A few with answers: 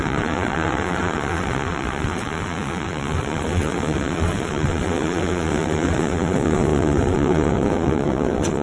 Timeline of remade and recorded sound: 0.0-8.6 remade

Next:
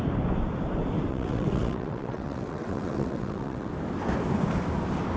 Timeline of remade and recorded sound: 0.0-1.1 recorded; 1.1-3.7 remade; 3.7-5.2 recorded

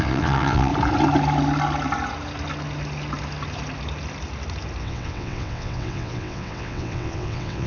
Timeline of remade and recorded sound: 0.0-0.7 remade; 0.7-4.8 recorded; 4.8-7.7 remade

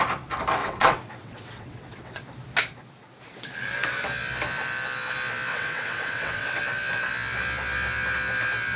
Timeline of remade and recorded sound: 0.0-0.6 recorded; 0.6-2.2 remade; 2.2-5.5 recorded; 5.5-6.6 remade; 6.6-8.8 recorded

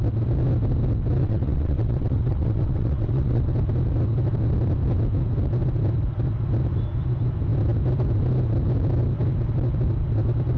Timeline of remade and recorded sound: 0.0-1.2 recorded; 1.2-3.4 remade; 3.4-10.6 recorded

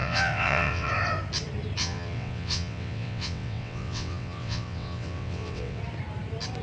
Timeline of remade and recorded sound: 0.0-0.9 remade; 0.9-1.8 recorded; 1.8-5.8 remade; 5.8-6.6 recorded

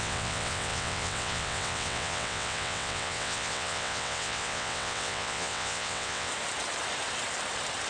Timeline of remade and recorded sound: 0.0-6.3 remade; 6.3-7.9 recorded

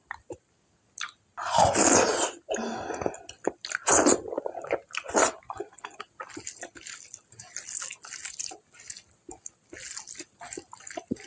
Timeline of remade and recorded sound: 0.0-11.3 recorded